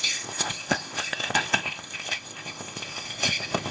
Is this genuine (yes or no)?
no